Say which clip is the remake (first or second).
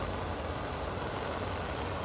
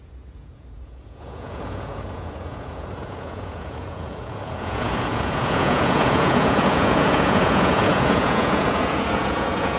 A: second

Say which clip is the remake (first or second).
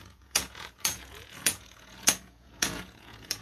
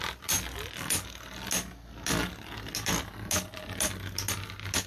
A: first